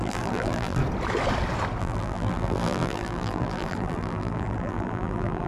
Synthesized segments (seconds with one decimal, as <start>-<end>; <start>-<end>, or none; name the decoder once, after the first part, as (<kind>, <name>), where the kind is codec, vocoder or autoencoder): 0.0-0.8 (vocoder, BigVGAN v2); 1.8-5.5